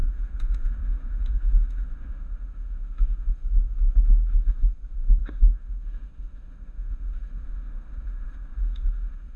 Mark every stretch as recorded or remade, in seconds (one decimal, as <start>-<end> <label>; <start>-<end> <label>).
0.0-9.4 remade